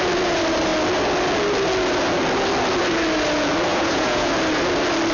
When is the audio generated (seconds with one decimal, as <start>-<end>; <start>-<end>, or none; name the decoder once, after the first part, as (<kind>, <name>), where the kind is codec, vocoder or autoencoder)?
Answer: 3.7-4.3 (vocoder, Vocos)